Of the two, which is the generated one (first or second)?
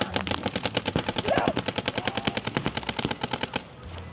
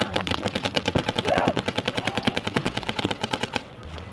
second